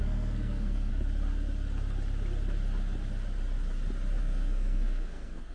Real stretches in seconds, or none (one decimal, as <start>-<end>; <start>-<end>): 0.9-4.2